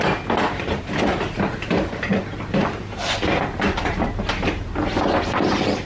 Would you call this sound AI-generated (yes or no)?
no